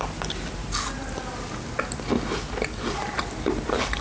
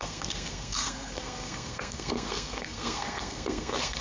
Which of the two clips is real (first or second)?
first